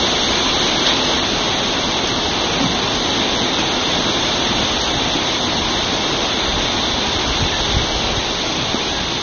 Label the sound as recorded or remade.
recorded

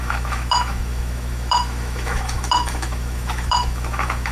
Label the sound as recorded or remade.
remade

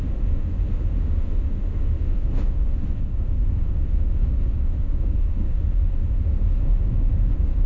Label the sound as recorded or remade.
remade